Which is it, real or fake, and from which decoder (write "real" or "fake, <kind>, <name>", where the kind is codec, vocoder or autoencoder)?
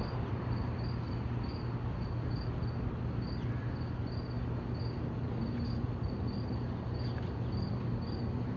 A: real